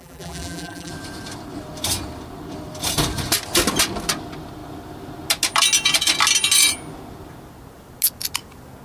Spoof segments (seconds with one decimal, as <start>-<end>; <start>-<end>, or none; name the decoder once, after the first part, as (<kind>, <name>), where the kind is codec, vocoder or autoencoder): 0.0-0.9 (vocoder, BigVGAN v2)

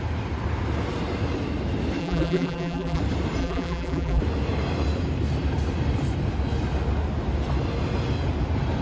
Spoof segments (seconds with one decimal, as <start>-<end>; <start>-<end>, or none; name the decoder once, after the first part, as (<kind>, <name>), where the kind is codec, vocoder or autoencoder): 2.0-3.0 (vocoder, BigVGAN v2); 3.4-4.2